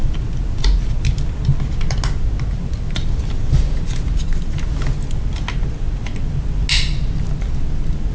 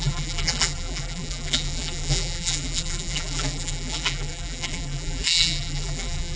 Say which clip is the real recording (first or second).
first